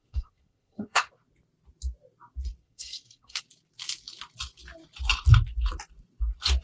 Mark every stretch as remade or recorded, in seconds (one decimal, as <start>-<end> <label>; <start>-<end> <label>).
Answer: 0.0-1.1 remade; 1.1-2.6 recorded; 2.6-3.4 remade; 3.4-6.6 recorded